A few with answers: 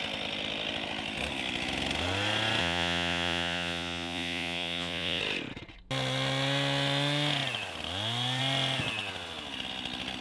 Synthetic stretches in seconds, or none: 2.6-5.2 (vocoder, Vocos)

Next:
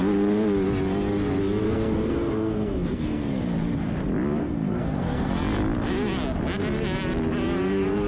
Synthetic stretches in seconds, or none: 1.6-3.3 (codec, SNAC); 4.4-5.3

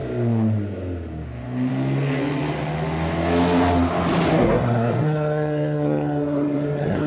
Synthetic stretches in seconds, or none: 4.3-7.1 (codec, SNAC)

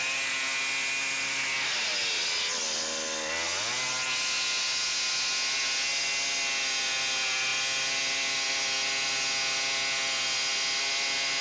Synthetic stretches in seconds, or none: none

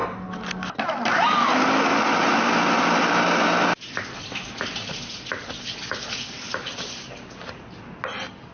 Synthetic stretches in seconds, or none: none